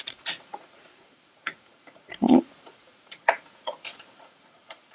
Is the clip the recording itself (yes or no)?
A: no